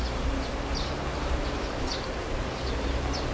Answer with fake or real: fake